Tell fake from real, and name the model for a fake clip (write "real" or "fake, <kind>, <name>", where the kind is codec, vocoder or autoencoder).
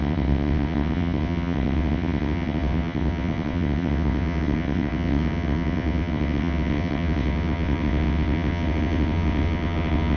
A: fake, vocoder, WaveNeXt